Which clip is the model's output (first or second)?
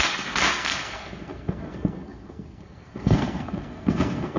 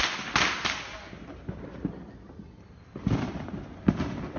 first